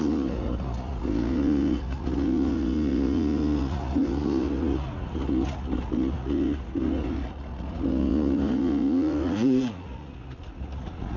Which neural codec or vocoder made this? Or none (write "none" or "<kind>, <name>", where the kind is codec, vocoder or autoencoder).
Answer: vocoder, Vocos